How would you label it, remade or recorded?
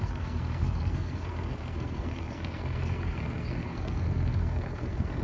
remade